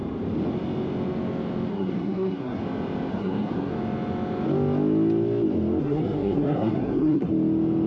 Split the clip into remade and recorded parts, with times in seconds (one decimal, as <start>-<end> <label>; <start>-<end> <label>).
0.0-1.7 recorded; 1.7-2.6 remade; 2.6-3.1 recorded; 3.1-3.7 remade; 3.7-5.8 recorded; 5.8-7.3 remade; 7.3-7.9 recorded